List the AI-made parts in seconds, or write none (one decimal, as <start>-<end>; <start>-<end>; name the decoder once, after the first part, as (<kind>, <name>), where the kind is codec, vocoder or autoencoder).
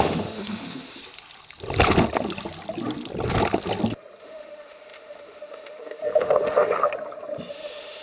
0.0-1.0 (autoencoder, DAC-VAE); 4.2-6.9; 7.5-8.0